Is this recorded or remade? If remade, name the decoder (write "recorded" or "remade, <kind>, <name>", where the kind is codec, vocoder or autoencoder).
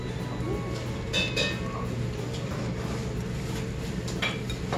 recorded